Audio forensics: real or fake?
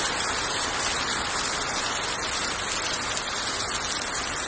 real